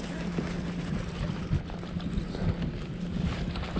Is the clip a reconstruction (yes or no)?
no